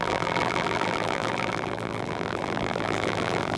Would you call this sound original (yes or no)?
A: no